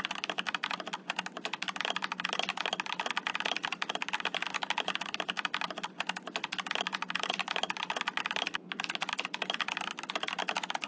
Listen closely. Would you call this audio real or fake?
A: real